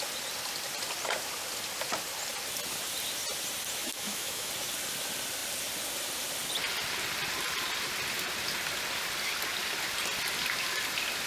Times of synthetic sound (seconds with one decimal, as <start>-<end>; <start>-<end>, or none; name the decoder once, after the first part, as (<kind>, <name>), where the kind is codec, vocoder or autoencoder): 3.8-4.5 (autoencoder, DAC-VAE)